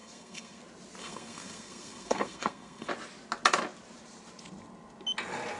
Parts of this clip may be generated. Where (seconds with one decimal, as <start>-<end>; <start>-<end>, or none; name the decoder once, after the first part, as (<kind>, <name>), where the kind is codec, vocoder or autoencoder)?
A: 0.0-0.6 (codec, SNAC); 1.0-2.9